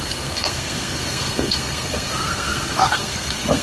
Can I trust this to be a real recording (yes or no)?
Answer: no